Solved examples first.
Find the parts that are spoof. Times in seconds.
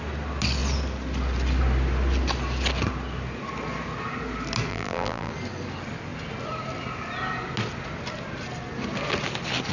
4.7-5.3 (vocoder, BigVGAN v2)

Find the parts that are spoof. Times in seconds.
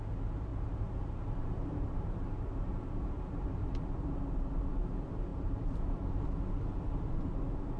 0.5-3.5 (vocoder, BigVGAN v2); 5.3-6.2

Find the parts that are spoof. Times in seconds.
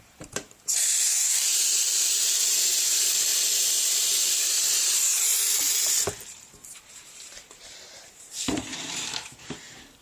0.0-3.3 (vocoder, BigVGAN v2); 4.4-5.3; 6.1-10.0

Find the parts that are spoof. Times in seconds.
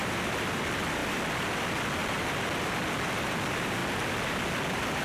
0.0-0.6 (vocoder, BigVGAN v2)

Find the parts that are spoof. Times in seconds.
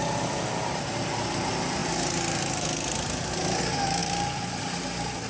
4.0-4.6 (vocoder, BigVGAN v2)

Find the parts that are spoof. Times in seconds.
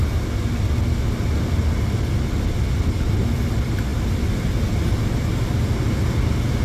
none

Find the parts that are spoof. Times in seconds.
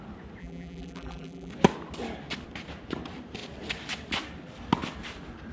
0.4-1.5 (vocoder, BigVGAN v2)